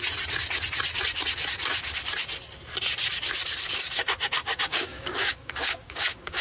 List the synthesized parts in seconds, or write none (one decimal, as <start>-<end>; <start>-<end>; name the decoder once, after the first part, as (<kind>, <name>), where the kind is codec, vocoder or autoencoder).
4.4-6.4 (codec, DAC)